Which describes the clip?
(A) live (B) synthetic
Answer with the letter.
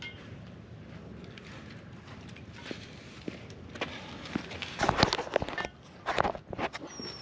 A